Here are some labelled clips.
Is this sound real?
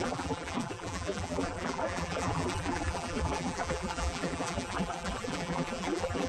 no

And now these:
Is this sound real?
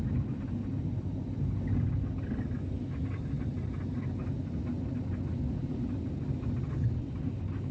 yes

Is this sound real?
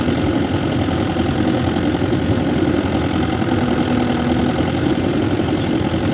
yes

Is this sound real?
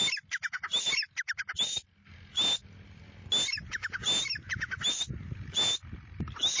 yes